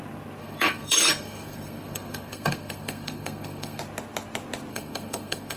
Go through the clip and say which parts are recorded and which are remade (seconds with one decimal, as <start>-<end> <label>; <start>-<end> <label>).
0.0-0.4 recorded; 0.4-3.8 remade; 3.8-4.7 recorded; 4.7-5.6 remade